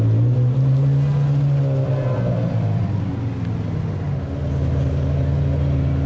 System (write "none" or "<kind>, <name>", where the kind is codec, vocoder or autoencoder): none